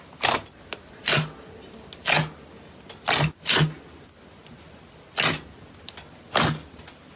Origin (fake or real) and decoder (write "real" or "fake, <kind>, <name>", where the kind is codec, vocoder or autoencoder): real